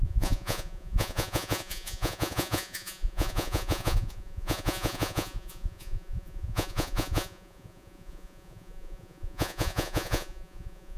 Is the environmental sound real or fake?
fake